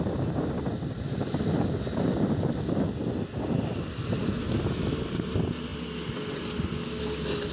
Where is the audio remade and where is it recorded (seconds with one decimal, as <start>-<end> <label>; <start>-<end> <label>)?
0.0-7.5 recorded